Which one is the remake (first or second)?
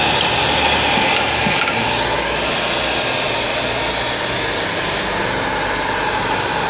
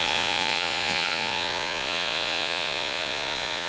second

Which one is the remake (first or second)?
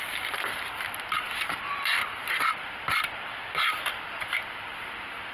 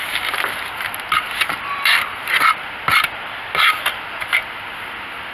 first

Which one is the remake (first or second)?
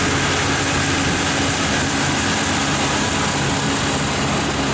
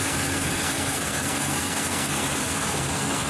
second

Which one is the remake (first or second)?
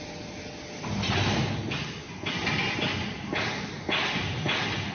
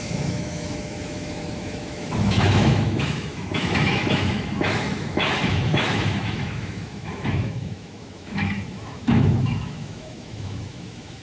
second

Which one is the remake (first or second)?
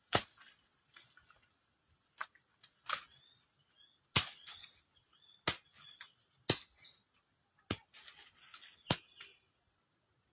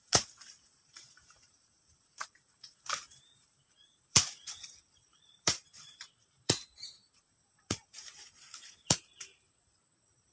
second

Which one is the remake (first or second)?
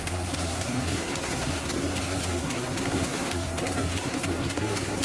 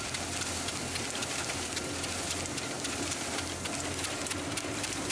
first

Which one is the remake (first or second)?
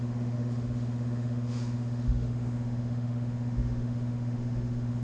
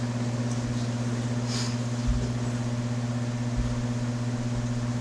first